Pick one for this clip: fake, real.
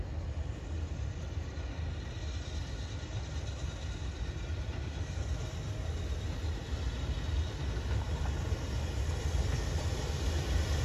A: real